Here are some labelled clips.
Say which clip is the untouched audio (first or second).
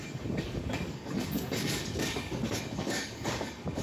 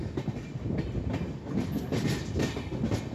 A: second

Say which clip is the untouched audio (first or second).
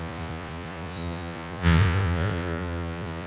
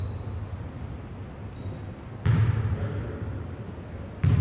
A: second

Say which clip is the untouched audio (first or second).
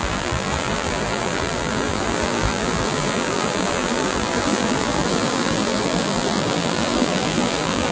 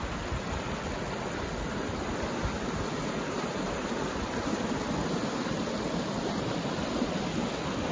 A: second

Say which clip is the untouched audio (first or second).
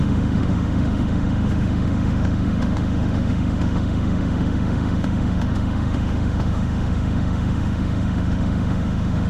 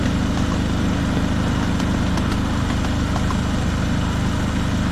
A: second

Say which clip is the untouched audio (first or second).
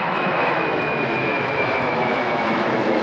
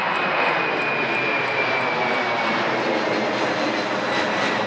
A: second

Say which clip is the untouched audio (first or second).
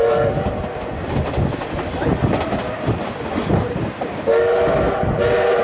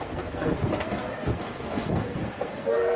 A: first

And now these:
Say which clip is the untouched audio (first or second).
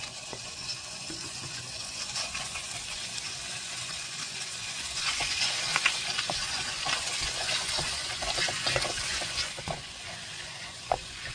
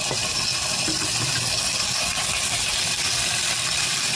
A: second